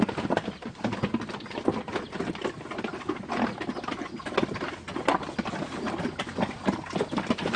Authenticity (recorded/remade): recorded